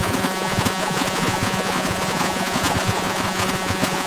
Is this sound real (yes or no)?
no